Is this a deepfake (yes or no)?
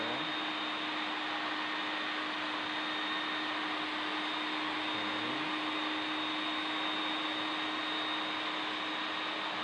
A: no